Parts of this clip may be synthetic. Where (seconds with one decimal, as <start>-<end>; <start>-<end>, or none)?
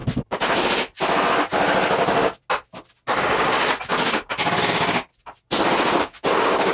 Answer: 3.2-5.1; 6.0-6.7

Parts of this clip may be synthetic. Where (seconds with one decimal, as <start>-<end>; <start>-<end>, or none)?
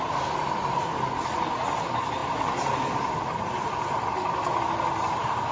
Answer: none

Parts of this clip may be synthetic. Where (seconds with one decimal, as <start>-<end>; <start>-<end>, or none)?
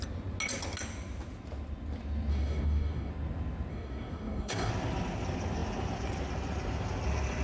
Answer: 2.3-3.1; 3.7-4.7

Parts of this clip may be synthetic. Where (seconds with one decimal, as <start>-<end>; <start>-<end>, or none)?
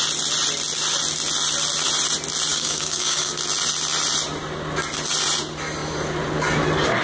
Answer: 2.5-3.3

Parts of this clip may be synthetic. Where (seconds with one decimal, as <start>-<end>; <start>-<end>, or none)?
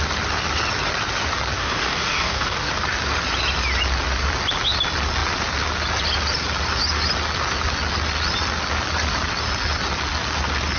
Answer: 1.6-2.7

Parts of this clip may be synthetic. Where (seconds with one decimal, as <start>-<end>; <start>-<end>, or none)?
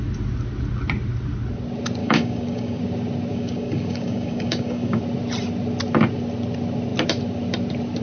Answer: 2.0-2.8; 3.3-5.0